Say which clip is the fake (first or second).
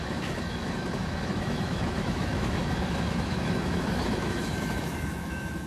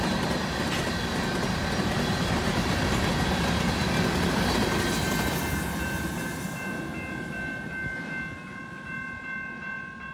first